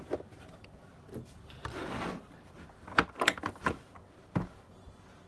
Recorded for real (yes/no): yes